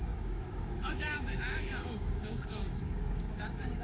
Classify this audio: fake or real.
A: fake